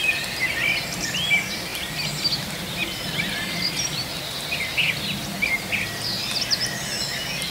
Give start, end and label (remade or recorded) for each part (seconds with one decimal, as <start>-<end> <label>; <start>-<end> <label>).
0.0-7.5 recorded